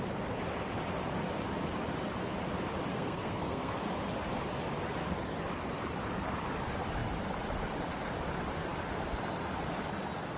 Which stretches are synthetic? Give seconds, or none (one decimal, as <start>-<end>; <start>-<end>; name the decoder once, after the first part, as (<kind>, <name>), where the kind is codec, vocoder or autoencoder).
2.9-3.7 (codec, SNAC)